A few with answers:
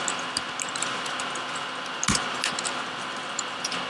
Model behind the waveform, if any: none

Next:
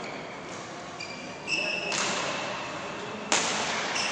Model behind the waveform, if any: none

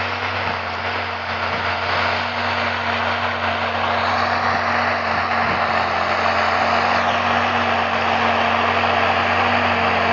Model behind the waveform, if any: none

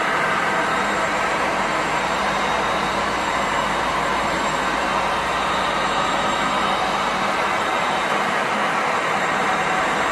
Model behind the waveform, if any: vocoder, BigVGAN v2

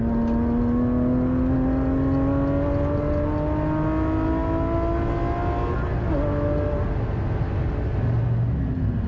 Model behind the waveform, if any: none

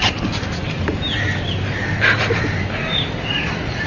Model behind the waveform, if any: none